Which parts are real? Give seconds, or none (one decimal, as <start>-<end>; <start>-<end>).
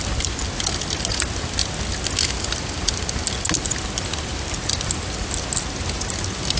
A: 0.0-6.6